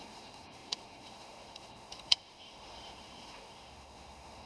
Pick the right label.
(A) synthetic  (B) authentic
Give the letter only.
A